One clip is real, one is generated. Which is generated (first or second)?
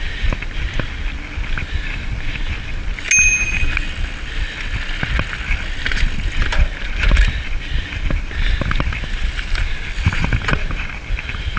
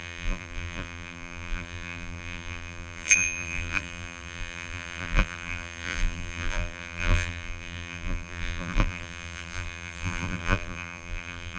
second